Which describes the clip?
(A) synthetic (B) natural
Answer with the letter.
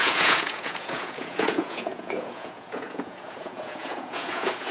A